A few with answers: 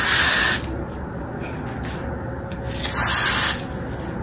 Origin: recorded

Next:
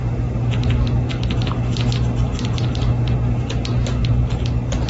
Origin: recorded